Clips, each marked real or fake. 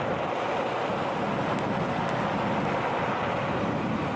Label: real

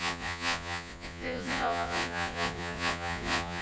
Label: fake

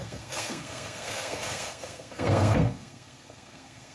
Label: fake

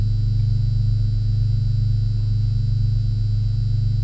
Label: real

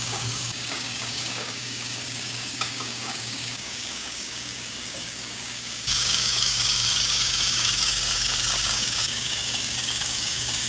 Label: fake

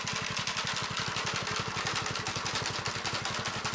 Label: real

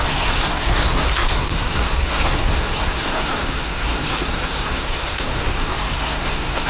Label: fake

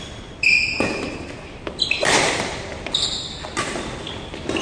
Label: fake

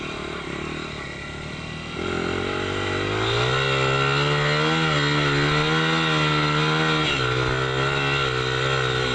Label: real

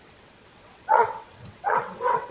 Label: fake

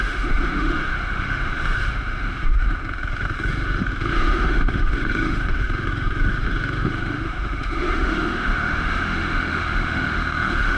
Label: fake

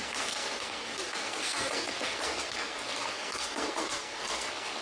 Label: fake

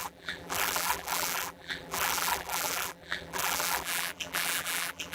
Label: fake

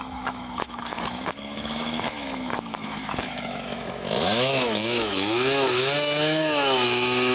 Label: fake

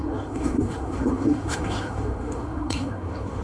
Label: fake